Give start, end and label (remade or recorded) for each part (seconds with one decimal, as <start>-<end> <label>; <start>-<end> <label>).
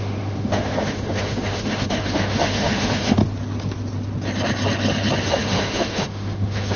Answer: 0.0-3.2 remade; 3.2-5.2 recorded; 5.2-6.8 remade